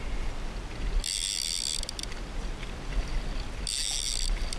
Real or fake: real